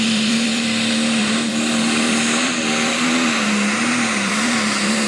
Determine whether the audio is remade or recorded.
remade